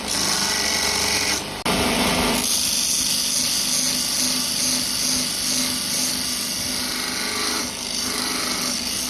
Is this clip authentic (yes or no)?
yes